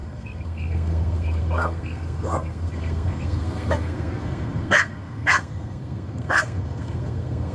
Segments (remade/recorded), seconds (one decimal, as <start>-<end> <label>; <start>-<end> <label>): 0.0-7.5 remade